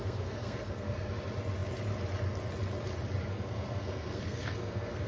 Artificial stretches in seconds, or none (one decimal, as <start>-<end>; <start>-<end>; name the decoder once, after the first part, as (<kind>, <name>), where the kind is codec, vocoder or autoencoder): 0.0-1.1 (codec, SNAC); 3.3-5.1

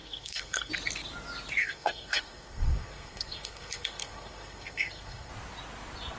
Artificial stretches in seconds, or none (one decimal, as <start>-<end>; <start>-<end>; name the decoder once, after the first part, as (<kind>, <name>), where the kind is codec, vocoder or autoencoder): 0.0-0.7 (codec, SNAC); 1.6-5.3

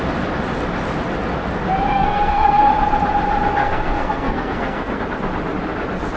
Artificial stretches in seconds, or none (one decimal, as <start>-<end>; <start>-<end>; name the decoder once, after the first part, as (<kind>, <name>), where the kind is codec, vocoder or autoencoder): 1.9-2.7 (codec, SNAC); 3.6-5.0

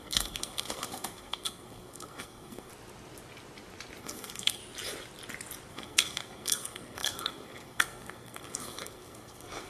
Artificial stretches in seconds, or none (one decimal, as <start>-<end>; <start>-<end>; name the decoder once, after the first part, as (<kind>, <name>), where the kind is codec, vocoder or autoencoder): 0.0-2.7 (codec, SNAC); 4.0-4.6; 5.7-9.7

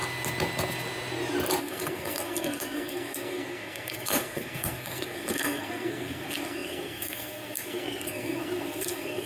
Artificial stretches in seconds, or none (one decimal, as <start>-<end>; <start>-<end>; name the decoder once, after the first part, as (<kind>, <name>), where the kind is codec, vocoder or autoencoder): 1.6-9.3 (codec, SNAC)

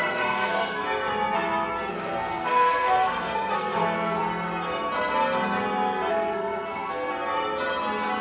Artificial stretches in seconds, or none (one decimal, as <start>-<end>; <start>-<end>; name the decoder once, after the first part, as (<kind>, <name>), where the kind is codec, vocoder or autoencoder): 0.0-0.8 (codec, SNAC); 1.9-4.2; 6.1-7.1